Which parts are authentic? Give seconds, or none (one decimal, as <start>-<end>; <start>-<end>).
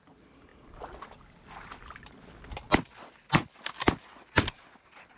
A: 0.0-5.2